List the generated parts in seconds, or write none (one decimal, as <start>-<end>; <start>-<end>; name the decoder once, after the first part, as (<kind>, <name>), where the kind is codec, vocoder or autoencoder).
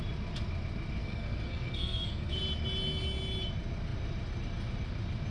1.0-2.4 (codec, SNAC)